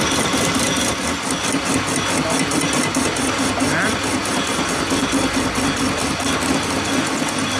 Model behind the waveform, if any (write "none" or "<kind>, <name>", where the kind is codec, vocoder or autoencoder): none